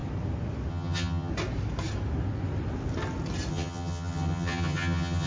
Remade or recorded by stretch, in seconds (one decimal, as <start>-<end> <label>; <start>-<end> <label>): 0.0-0.7 recorded; 0.7-1.3 remade; 1.3-3.5 recorded; 3.5-5.3 remade